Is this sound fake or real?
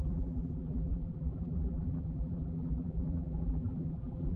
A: fake